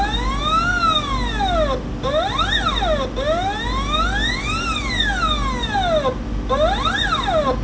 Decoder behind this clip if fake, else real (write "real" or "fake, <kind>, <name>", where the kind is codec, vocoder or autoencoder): real